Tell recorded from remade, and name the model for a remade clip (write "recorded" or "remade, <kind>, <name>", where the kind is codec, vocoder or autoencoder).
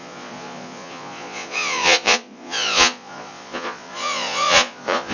remade, vocoder, Vocos